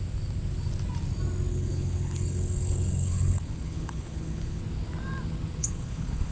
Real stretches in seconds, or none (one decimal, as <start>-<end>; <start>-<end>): 0.0-1.5; 4.6-5.6